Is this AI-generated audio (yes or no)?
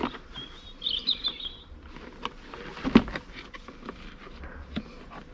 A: no